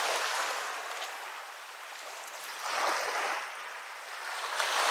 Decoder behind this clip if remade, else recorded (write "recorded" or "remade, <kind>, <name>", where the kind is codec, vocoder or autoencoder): recorded